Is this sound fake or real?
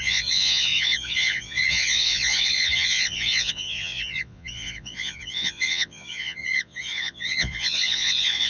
fake